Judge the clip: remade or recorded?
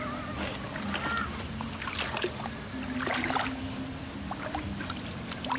recorded